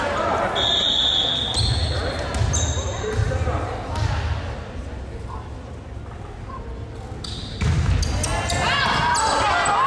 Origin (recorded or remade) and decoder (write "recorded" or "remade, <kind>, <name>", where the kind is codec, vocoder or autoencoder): recorded